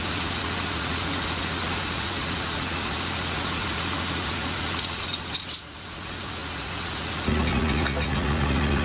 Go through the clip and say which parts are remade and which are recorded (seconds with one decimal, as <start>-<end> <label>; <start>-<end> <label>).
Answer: 0.0-8.8 remade

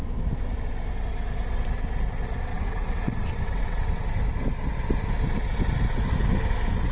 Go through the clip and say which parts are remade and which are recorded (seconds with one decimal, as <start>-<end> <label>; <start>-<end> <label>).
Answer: 0.0-2.5 recorded; 2.5-4.0 remade; 4.0-6.9 recorded

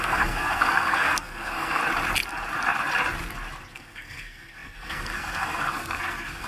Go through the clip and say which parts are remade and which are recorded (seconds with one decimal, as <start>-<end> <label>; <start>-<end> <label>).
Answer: 0.0-1.8 remade; 1.8-3.7 recorded; 3.7-6.5 remade

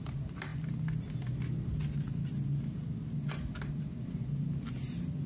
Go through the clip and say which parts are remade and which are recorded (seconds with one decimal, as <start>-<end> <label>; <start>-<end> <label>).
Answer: 0.0-0.5 remade; 0.5-3.7 recorded; 3.7-5.3 remade

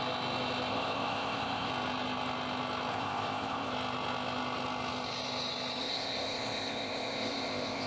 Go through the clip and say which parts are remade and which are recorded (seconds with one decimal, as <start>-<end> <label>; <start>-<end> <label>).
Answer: 0.0-0.7 recorded; 0.7-1.7 remade; 1.7-2.9 recorded; 2.9-3.7 remade; 3.7-5.8 recorded; 5.8-7.9 remade

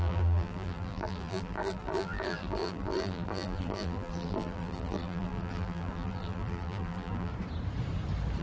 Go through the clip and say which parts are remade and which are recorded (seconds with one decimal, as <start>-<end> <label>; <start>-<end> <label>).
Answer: 0.0-7.3 remade; 7.3-8.4 recorded

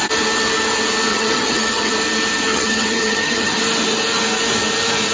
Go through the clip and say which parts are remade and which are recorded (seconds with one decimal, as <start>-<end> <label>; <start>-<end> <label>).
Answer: 0.0-1.1 recorded; 1.1-1.9 remade; 1.9-2.5 recorded; 2.5-3.6 remade; 3.6-5.1 recorded